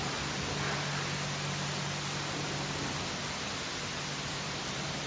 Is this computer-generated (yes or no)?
no